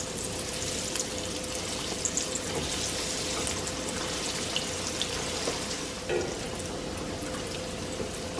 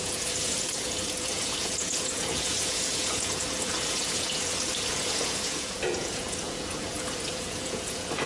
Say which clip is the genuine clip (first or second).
first